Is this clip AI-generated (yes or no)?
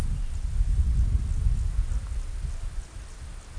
no